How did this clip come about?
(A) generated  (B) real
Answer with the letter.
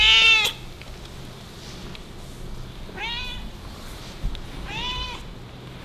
B